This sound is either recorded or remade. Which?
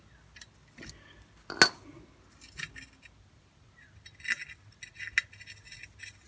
recorded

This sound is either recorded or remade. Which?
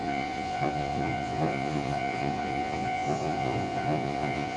remade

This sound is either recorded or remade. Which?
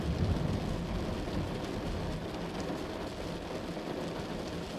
recorded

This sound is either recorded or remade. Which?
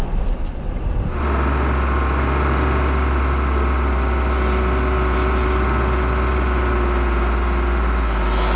recorded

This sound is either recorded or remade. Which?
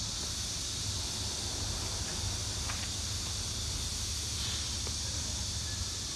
recorded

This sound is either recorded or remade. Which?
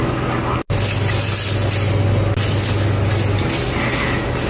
recorded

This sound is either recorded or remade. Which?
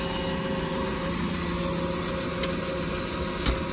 recorded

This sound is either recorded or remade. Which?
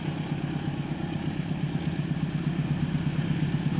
recorded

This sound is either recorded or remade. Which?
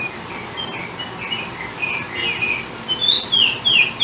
recorded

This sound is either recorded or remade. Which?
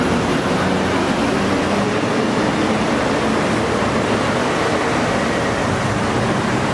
recorded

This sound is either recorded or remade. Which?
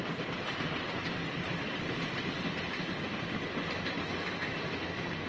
recorded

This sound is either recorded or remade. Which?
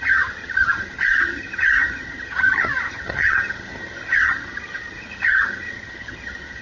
remade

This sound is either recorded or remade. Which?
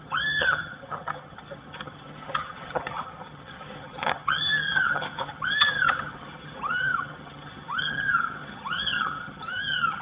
remade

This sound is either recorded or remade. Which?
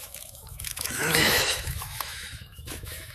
remade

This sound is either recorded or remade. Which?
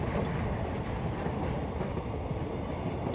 recorded